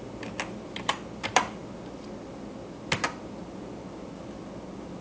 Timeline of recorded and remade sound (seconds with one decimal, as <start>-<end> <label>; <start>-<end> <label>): 0.0-5.0 recorded